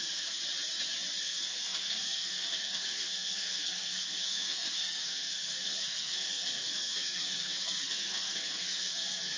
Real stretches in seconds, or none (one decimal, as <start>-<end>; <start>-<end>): 0.4-1.2